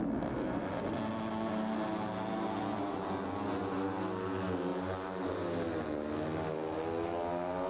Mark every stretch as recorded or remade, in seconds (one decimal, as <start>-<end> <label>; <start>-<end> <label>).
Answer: 0.0-4.7 recorded; 4.7-5.3 remade; 5.3-7.7 recorded